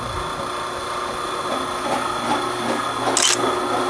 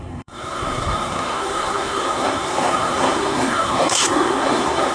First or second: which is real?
first